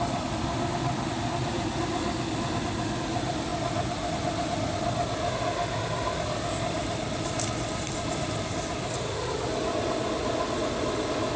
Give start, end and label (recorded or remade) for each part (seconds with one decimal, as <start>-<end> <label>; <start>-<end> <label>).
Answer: 0.0-11.4 recorded